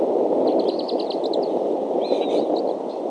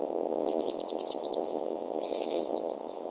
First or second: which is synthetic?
second